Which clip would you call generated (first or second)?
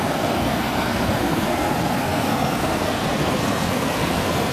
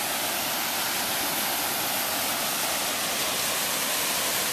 first